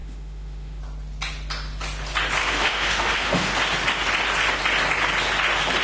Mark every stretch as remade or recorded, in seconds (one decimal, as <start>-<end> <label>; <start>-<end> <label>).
0.0-0.8 remade; 0.8-2.4 recorded; 2.4-3.5 remade; 3.5-5.8 recorded